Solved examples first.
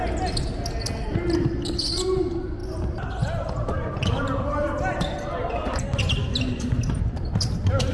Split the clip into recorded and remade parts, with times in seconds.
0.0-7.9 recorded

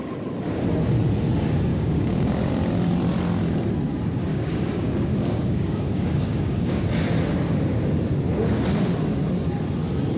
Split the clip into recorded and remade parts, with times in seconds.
0.0-1.7 recorded; 1.7-2.5 remade; 2.5-4.3 recorded; 4.3-6.8 remade; 6.8-10.2 recorded

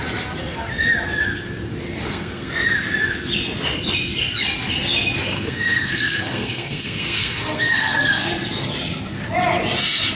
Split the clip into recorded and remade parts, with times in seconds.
0.0-2.0 recorded; 2.0-2.5 remade; 2.5-5.2 recorded; 5.2-8.3 remade; 8.3-10.1 recorded

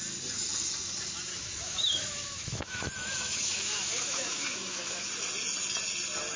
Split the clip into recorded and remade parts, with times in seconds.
0.0-1.3 recorded; 1.3-5.1 remade; 5.1-6.4 recorded

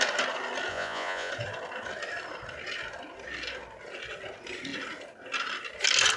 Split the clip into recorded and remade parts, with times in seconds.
0.0-0.7 recorded; 0.7-1.3 remade; 1.3-6.2 recorded

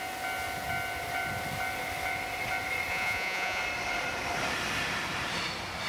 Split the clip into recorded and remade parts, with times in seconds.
0.0-2.9 recorded; 2.9-3.6 remade; 3.6-5.9 recorded